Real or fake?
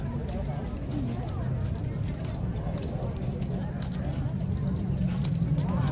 real